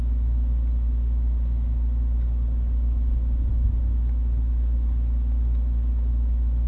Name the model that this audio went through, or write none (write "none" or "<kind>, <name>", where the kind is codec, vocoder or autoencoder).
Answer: none